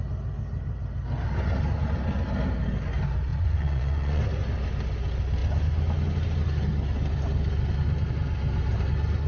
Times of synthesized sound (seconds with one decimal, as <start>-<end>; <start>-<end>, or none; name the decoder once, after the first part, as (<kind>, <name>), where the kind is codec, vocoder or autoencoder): 3.3-4.2 (vocoder, Vocos)

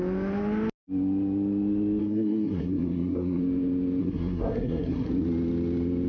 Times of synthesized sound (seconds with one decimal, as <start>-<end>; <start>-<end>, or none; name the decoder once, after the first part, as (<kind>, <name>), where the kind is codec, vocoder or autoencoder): 2.0-3.4 (codec, SNAC); 4.0-5.1

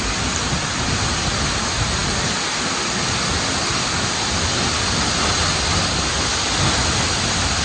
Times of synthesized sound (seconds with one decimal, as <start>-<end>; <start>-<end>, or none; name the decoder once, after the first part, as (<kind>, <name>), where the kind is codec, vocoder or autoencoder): none